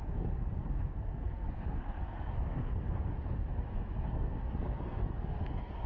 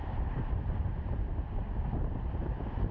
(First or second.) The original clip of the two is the second